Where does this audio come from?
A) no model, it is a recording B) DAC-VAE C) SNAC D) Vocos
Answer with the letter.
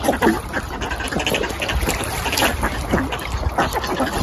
A